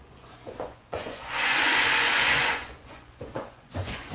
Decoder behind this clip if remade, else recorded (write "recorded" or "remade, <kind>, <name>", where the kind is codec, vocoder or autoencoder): remade, vocoder, Vocos